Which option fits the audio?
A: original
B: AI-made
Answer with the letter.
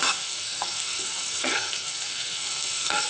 B